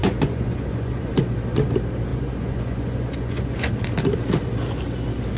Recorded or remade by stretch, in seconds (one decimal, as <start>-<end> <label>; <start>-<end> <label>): 0.0-1.2 remade; 1.2-2.1 recorded; 2.1-3.7 remade; 3.7-5.4 recorded